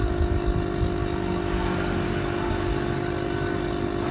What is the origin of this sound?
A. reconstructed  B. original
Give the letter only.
B